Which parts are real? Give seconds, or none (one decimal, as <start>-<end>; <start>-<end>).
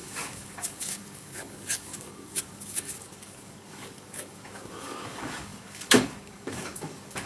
none